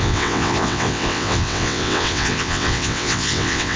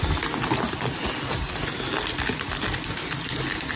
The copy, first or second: first